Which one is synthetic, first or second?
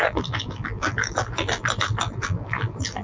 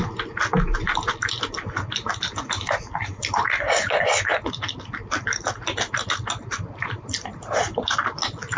first